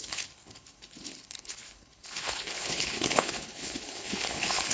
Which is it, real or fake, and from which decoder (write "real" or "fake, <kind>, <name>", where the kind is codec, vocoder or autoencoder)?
fake, codec, HILCodec